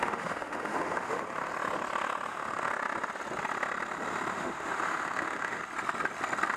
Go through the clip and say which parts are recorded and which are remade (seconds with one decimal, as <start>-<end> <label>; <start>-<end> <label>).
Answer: 0.0-1.5 remade; 1.5-2.3 recorded; 2.3-2.7 remade; 2.7-4.3 recorded; 4.3-5.6 remade; 5.6-6.6 recorded